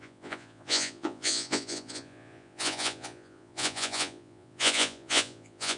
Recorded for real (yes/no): no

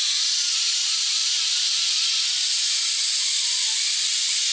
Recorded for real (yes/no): yes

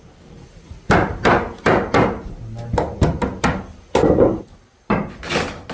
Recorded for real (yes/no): yes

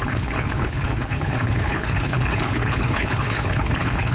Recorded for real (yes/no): no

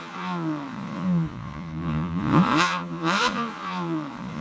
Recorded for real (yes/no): no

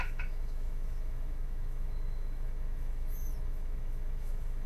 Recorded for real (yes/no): no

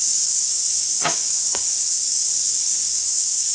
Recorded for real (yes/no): no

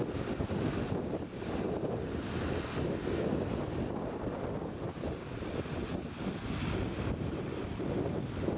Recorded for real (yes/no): yes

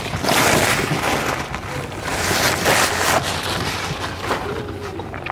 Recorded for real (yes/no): yes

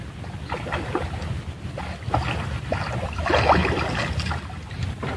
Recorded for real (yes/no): yes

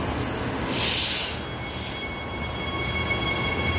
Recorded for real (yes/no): yes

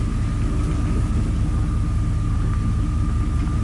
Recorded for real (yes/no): yes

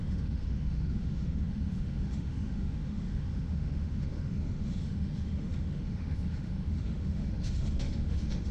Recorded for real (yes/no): no